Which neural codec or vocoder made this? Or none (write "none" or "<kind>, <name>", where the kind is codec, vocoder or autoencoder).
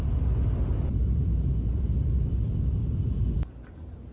none